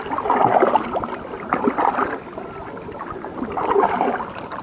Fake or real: real